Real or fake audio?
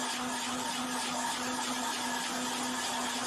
real